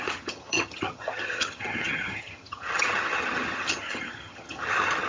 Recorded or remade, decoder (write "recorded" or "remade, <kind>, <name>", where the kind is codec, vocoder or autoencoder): remade, vocoder, HiFi-GAN